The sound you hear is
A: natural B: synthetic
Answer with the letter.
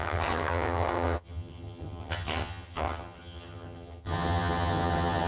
B